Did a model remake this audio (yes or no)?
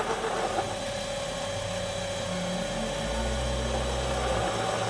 no